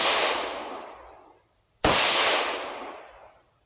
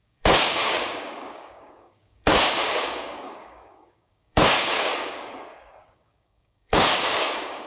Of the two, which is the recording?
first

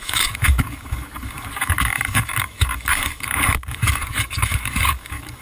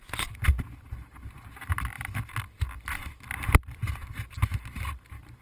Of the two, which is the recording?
second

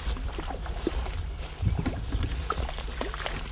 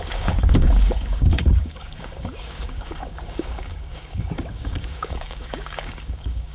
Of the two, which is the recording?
first